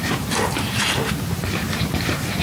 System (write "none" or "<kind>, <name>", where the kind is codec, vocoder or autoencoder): vocoder, BigVGAN v2